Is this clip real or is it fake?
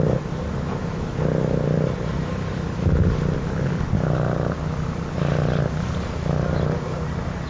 real